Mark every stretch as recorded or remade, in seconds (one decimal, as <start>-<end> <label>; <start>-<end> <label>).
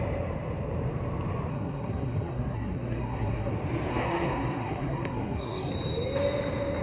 0.0-1.5 recorded; 1.5-3.5 remade; 3.5-3.9 recorded; 3.9-5.7 remade; 5.7-6.8 recorded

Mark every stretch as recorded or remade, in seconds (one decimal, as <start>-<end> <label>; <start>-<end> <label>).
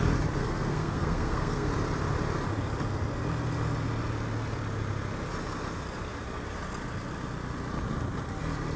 0.0-0.4 recorded; 0.4-1.7 remade; 1.7-8.8 recorded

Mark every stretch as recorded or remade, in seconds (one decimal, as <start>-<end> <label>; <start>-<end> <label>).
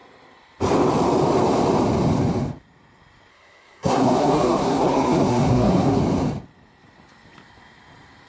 0.0-3.3 recorded; 3.3-6.0 remade; 6.0-8.3 recorded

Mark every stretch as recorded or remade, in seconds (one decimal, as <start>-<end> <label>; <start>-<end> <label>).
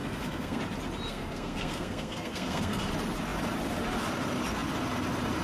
0.0-0.6 remade; 0.6-1.1 recorded; 1.1-2.8 remade; 2.8-5.4 recorded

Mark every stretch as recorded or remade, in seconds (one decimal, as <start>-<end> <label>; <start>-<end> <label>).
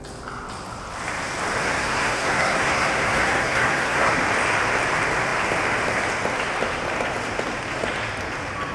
0.0-1.6 recorded; 1.6-4.1 remade; 4.1-8.7 recorded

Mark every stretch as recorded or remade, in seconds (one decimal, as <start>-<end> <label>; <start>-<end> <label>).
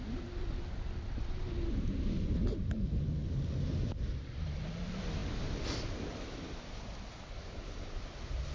0.0-8.5 recorded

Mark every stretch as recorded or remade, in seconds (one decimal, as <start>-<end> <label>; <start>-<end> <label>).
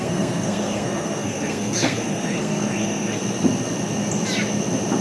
0.0-3.2 remade; 3.2-5.0 recorded